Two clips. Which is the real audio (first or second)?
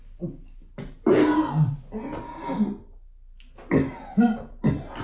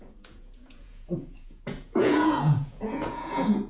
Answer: first